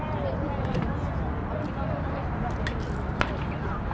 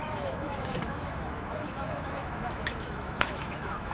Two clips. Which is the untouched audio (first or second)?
first